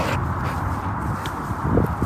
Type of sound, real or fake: real